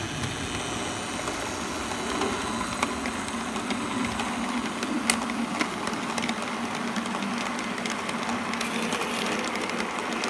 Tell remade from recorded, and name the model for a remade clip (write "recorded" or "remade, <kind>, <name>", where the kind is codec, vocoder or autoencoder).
recorded